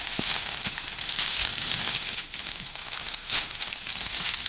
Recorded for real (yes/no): no